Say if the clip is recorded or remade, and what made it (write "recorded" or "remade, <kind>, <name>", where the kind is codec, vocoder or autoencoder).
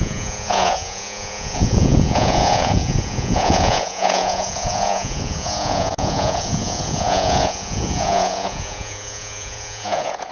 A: remade, vocoder, Vocos